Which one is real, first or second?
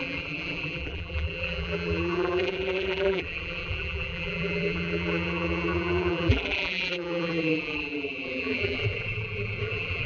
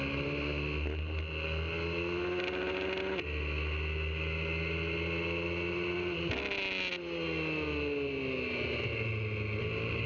second